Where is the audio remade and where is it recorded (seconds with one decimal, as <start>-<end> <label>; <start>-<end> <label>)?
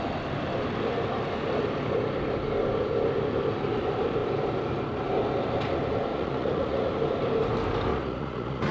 0.0-6.1 recorded; 6.1-6.9 remade; 6.9-7.9 recorded; 7.9-8.7 remade